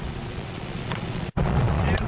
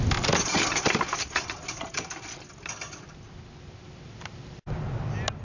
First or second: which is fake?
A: first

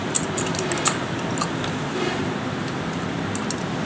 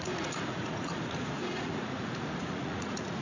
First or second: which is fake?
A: second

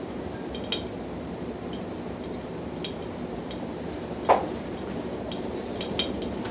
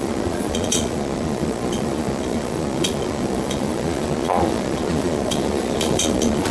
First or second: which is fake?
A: second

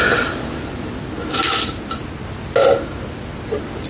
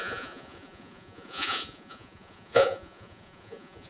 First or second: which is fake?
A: second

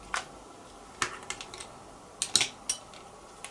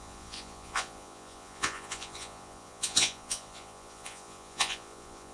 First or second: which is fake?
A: second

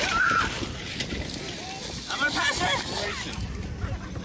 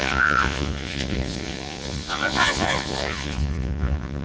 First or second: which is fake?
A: second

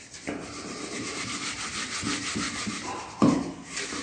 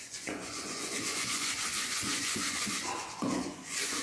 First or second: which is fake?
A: second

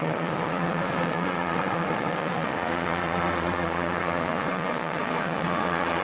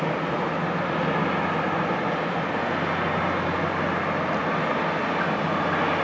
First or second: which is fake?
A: first